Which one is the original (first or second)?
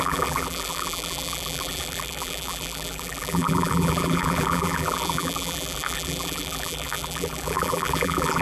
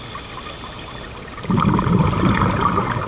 second